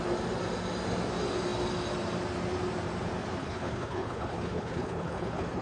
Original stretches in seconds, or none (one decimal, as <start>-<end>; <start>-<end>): 0.0-3.4